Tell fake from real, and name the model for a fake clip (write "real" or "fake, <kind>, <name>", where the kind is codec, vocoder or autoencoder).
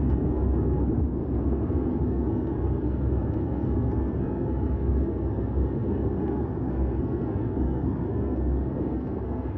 fake, codec, SNAC